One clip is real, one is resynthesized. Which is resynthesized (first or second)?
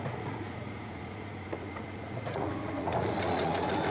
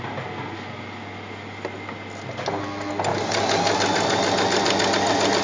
first